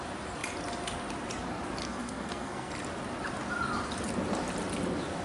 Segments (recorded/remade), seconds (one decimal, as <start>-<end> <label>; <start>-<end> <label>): 0.0-1.8 recorded; 1.8-2.7 remade; 2.7-5.2 recorded